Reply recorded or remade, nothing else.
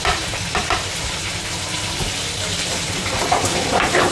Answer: remade